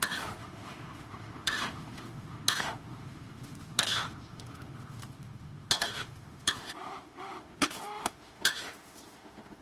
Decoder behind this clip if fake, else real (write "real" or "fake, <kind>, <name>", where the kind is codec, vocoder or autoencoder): fake, autoencoder, DAC-VAE